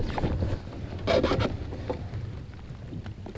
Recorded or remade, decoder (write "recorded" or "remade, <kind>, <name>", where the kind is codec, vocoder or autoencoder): recorded